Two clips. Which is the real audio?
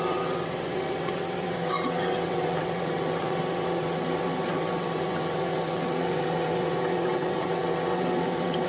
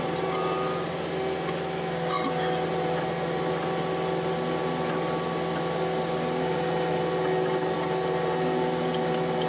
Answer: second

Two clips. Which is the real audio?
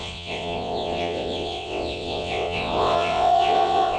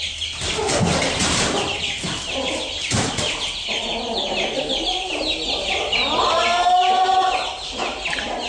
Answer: second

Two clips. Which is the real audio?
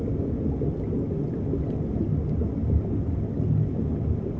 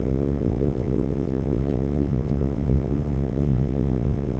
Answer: first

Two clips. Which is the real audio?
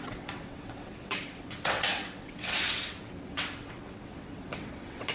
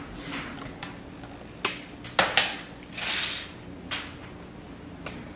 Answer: second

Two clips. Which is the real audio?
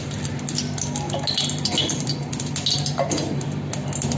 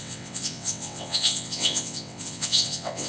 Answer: first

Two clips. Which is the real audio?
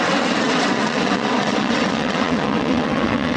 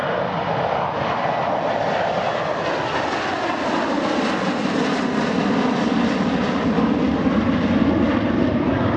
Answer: second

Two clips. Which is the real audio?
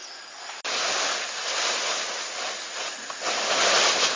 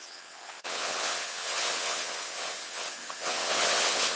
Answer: first